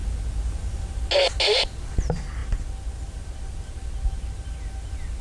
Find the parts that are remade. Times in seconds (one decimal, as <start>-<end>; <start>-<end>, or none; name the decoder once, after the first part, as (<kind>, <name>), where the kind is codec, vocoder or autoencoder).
none